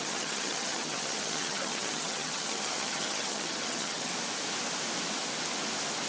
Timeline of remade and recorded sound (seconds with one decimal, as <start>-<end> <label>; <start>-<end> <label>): 0.0-4.1 remade; 4.1-6.1 recorded

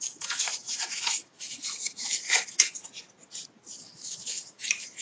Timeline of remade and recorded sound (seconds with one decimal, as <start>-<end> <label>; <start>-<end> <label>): 0.0-2.7 remade; 2.7-3.8 recorded; 3.8-5.0 remade

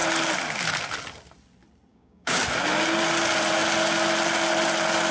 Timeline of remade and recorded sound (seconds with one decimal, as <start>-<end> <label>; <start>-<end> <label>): 0.0-1.9 recorded; 1.9-2.4 remade; 2.4-5.1 recorded

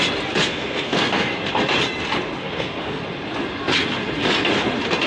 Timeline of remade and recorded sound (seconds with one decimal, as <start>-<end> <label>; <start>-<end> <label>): 0.0-0.4 recorded; 0.4-1.4 remade; 1.4-2.4 recorded; 2.4-3.0 remade; 3.0-5.1 recorded